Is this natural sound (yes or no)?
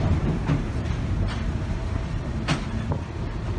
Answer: no